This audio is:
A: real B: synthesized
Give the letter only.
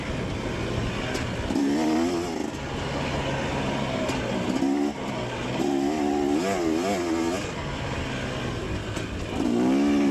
A